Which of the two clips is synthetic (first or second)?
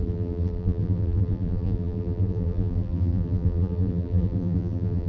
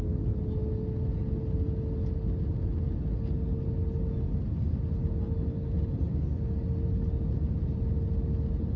first